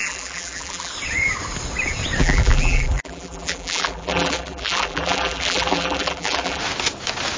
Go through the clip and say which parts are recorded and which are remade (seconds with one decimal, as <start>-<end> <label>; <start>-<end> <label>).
0.0-0.9 remade; 0.9-2.2 recorded; 2.2-6.6 remade; 6.6-7.4 recorded